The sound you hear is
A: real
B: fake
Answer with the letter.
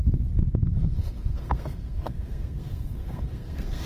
B